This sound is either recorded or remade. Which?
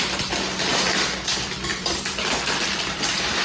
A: remade